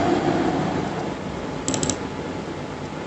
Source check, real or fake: real